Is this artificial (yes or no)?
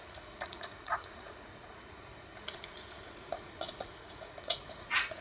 yes